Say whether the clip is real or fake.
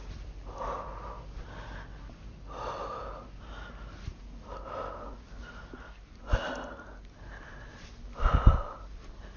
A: real